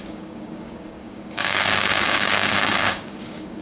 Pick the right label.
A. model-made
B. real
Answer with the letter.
A